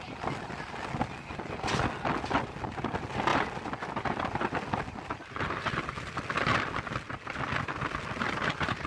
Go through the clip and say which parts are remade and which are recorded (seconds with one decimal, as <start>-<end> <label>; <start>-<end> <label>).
0.0-8.9 recorded